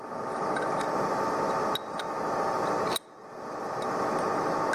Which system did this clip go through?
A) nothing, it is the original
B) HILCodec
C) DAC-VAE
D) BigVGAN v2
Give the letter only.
A